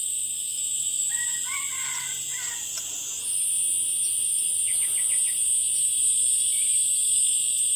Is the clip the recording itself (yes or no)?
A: yes